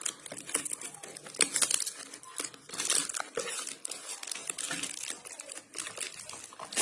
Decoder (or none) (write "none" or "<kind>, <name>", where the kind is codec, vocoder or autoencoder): none